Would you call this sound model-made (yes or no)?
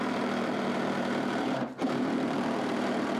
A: yes